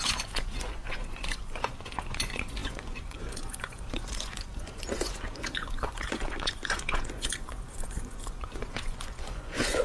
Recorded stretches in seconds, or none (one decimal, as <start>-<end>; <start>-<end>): none